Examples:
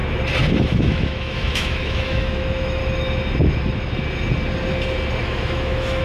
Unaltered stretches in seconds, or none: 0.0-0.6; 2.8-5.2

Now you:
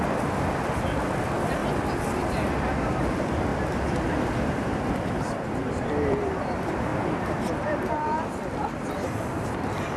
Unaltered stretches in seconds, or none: 1.6-2.8; 3.5-4.3; 6.9-7.9

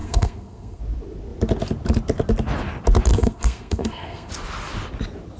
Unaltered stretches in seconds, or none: 0.8-3.1; 4.3-5.4

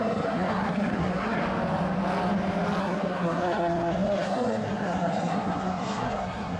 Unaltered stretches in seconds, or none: 1.4-2.8